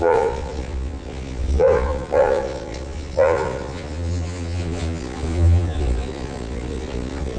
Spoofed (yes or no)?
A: yes